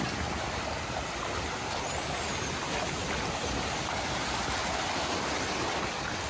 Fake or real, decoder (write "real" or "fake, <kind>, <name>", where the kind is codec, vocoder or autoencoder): real